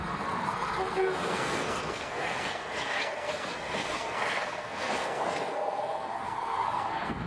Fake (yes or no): yes